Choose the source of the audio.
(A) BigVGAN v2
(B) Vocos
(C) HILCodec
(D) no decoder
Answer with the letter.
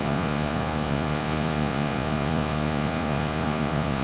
B